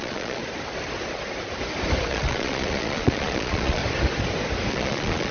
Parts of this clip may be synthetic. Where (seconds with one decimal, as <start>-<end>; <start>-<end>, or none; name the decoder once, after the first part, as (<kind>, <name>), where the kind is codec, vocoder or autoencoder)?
0.0-0.4 (vocoder, Vocos); 2.1-3.8; 4.7-5.3